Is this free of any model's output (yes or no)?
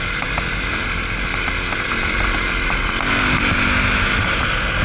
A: yes